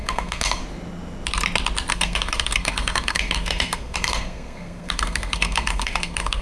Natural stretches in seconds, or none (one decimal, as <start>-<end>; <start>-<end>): 0.6-1.9